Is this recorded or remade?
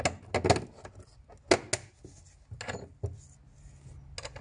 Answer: recorded